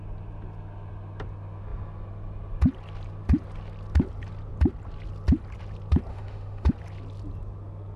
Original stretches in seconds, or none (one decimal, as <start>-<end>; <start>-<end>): 0.0-6.1; 6.7-8.0